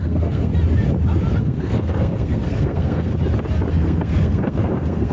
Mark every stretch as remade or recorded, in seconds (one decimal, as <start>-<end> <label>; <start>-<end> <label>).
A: 0.0-0.5 remade; 0.5-1.4 recorded; 1.4-3.1 remade; 3.1-3.7 recorded; 3.7-5.1 remade